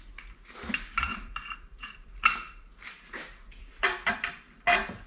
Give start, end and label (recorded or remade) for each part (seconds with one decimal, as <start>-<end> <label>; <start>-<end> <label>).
0.0-1.1 recorded; 1.1-4.1 remade; 4.1-5.1 recorded